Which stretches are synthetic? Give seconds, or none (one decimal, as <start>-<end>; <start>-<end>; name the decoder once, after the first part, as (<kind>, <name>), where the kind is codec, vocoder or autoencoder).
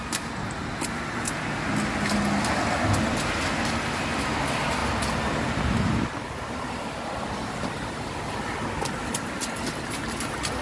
none